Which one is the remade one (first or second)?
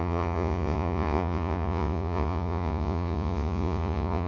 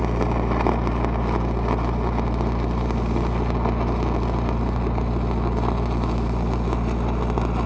first